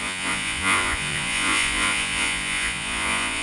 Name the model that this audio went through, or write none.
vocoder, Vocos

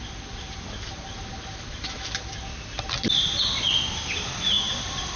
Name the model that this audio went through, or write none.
none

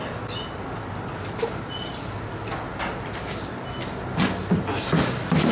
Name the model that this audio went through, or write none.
none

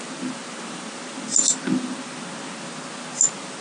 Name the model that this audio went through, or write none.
none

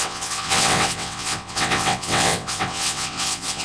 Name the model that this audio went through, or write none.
vocoder, WaveNeXt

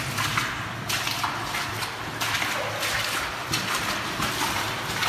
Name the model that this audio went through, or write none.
none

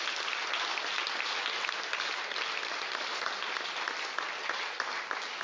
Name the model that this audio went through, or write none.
none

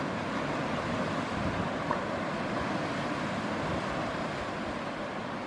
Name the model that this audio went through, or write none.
none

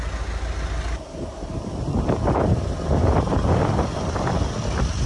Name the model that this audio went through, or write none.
none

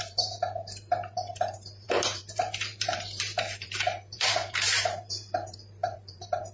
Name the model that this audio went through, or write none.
vocoder, BigVGAN v2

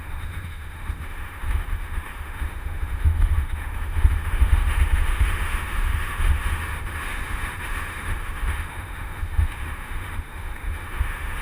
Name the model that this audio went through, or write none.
autoencoder, DAC-VAE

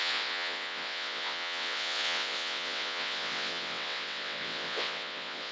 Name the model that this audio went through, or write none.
vocoder, WaveNeXt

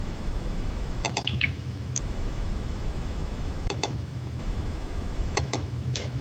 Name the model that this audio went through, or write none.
autoencoder, DAC-VAE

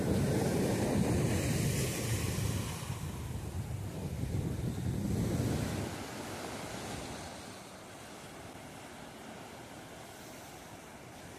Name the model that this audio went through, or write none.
none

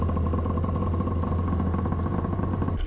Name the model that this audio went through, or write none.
none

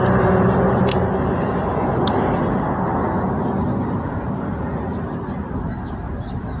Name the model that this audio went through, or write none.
none